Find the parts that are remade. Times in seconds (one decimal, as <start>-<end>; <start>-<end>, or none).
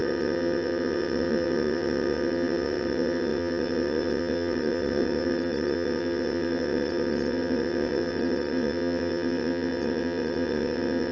0.0-11.1